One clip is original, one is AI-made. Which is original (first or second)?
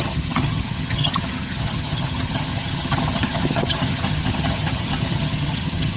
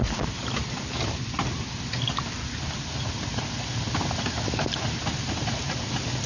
second